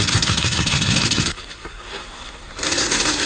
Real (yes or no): no